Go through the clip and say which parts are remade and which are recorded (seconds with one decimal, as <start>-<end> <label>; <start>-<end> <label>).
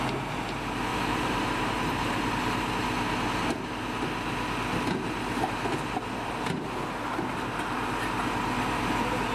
0.0-0.9 recorded; 0.9-2.3 remade; 2.3-9.3 recorded